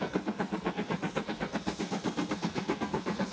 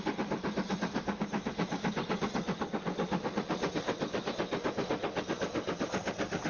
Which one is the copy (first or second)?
first